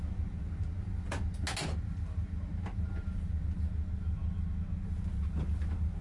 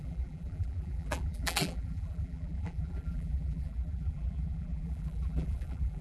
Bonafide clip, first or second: first